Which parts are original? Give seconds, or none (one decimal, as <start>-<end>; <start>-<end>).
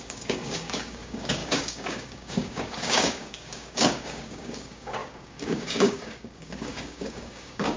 none